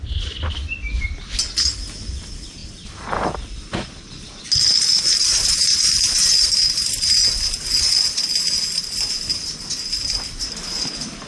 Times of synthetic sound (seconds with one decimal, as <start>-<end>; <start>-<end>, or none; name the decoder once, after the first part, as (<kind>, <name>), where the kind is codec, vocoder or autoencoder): none